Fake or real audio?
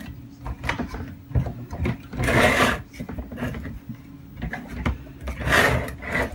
real